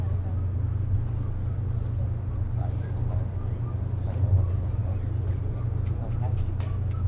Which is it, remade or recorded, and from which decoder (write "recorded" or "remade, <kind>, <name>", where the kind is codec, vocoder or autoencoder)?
recorded